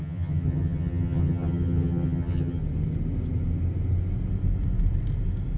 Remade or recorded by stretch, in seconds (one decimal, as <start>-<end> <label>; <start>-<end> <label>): 0.0-2.6 remade; 2.6-5.6 recorded